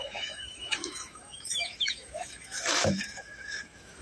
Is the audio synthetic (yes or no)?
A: yes